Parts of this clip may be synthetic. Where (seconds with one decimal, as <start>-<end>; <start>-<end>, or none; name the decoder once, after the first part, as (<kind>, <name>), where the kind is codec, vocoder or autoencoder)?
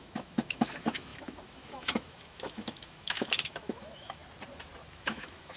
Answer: 0.0-4.2 (autoencoder, DAC-VAE); 4.9-5.6